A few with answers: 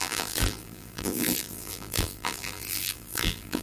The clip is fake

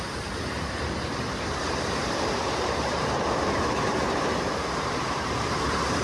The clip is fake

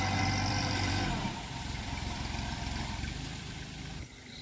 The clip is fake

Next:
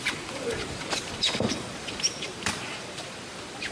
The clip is fake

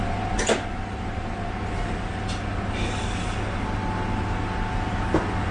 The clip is real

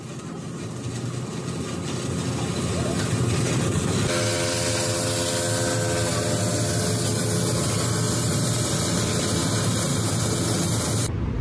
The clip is real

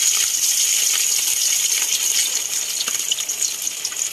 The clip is fake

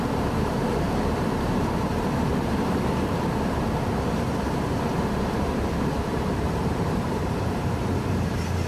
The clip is fake